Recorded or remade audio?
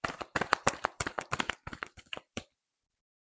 remade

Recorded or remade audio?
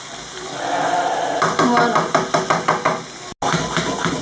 recorded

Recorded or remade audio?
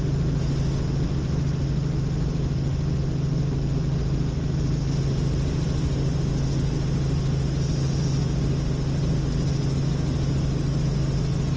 recorded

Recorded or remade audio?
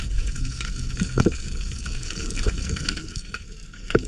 remade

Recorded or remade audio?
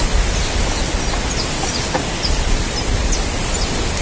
recorded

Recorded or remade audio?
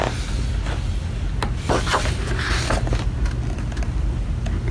recorded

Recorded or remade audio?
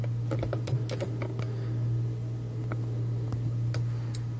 recorded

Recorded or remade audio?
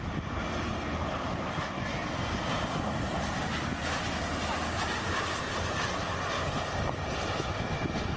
recorded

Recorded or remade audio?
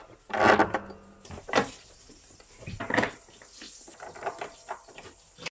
recorded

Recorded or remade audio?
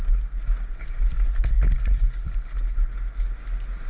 recorded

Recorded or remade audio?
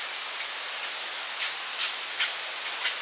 recorded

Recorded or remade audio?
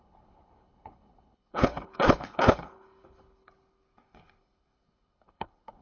remade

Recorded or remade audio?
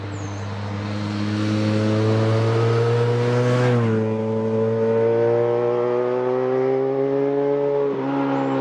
recorded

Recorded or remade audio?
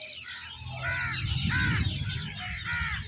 remade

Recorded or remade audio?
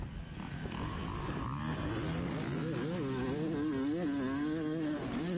recorded